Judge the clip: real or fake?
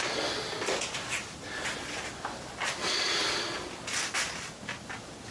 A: real